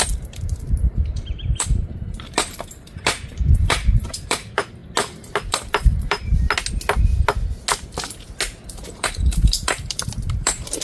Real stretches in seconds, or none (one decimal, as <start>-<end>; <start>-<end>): 4.8-5.5; 6.3-8.8

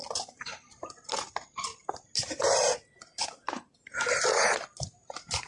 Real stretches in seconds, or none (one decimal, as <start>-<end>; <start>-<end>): 0.0-5.5

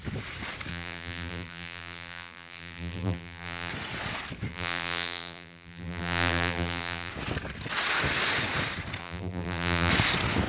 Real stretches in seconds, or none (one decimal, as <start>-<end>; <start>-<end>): 0.0-0.7; 3.7-4.5; 7.1-9.0; 9.9-10.5

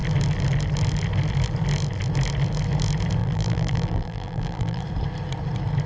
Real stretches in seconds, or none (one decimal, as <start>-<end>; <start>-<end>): 0.0-3.2; 4.8-5.9

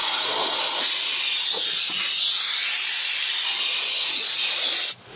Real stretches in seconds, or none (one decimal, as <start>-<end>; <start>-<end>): 0.0-5.2

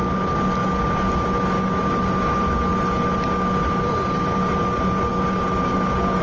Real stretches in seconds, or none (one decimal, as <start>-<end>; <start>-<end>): 0.0-6.2